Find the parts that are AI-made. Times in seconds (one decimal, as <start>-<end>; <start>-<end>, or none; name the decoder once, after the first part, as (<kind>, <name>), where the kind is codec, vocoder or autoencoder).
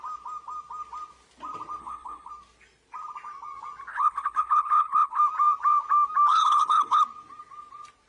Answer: 1.8-2.3 (codec, HILCodec); 3.9-5.2; 6.3-7.0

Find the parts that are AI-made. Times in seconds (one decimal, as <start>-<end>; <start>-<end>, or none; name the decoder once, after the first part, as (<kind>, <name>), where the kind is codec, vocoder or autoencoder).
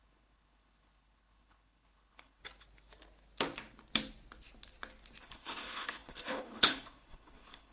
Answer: 0.0-2.4 (codec, HILCodec); 5.2-7.7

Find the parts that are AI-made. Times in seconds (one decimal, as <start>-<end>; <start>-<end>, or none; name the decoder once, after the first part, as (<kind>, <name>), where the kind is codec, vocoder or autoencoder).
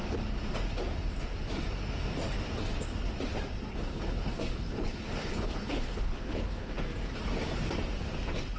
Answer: 3.7-6.7 (codec, HILCodec)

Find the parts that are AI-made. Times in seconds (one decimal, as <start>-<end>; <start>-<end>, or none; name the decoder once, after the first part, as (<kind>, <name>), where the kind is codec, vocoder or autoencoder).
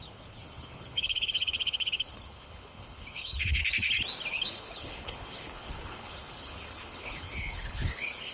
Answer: 0.0-3.6 (codec, HILCodec); 4.3-8.3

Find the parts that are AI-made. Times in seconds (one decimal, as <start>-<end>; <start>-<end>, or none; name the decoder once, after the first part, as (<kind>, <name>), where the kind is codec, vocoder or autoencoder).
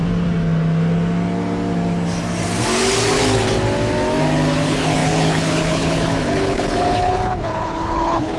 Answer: 4.6-8.4 (codec, HILCodec)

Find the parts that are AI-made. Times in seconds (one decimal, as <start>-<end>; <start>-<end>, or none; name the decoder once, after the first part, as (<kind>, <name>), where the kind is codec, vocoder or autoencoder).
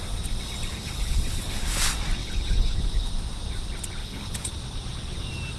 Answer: 0.7-1.8 (codec, HILCodec); 2.2-3.1; 4.0-4.5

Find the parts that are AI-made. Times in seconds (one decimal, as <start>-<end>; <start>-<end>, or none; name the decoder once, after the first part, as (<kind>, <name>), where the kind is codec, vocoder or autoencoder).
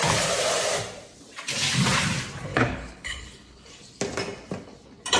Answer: 2.5-3.7 (codec, HILCodec)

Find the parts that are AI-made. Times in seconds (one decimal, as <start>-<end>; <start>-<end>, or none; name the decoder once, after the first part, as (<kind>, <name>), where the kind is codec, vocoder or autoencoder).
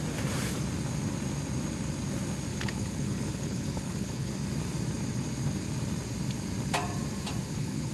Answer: 2.5-4.3 (codec, HILCodec); 7.4-7.9